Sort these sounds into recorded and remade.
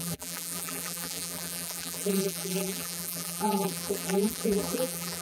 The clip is remade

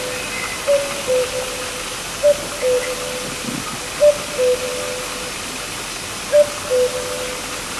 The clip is recorded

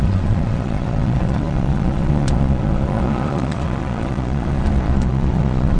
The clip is remade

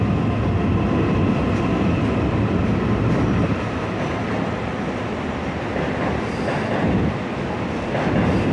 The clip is recorded